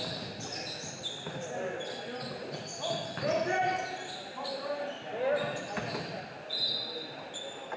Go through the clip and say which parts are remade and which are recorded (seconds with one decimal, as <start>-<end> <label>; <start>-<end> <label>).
0.0-7.8 recorded